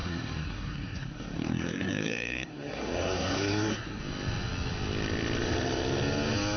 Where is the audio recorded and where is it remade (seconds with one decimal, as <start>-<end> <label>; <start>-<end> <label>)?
0.0-4.0 remade; 4.0-6.6 recorded